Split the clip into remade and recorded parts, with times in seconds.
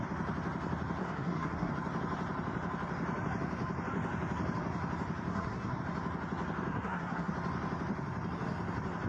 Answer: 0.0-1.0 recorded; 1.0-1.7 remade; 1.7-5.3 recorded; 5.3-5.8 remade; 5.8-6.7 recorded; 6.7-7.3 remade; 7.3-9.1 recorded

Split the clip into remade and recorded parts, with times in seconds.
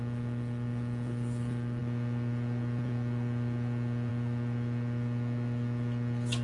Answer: 0.0-6.4 recorded